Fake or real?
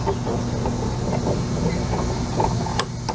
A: real